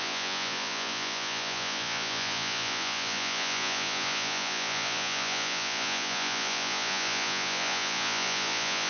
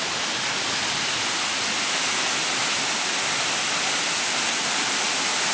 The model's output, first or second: first